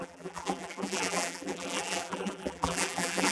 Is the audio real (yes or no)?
no